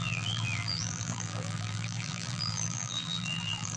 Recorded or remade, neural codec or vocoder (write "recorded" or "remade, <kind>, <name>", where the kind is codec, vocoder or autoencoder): remade, vocoder, BigVGAN v2